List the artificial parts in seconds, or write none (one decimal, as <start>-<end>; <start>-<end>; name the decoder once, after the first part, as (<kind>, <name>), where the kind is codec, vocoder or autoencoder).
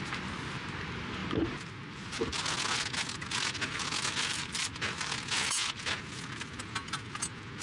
1.2-2.3 (vocoder, BigVGAN v2); 4.3-5.1